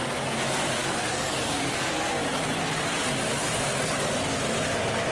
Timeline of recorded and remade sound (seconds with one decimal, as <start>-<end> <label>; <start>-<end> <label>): 0.0-0.8 recorded; 0.8-1.9 remade; 1.9-5.1 recorded